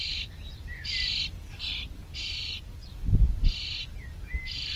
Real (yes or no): yes